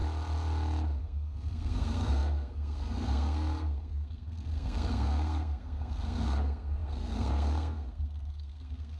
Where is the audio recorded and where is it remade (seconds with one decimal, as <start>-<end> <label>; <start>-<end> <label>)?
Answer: 0.0-1.0 recorded; 1.0-9.0 remade